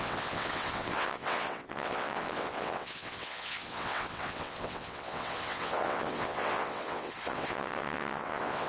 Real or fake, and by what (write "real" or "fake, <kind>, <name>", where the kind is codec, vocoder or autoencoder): fake, vocoder, WaveNeXt